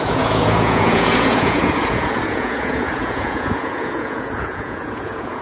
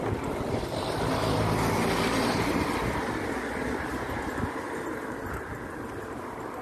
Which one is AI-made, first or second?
first